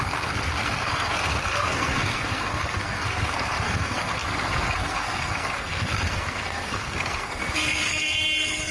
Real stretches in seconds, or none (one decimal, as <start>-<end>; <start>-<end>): none